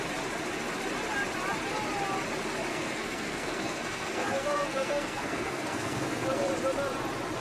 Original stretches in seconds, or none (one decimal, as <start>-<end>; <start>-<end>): 0.0-2.7; 6.5-7.4